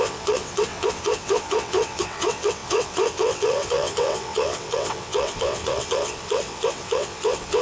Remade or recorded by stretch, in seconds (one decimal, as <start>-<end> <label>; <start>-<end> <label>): 0.0-7.6 remade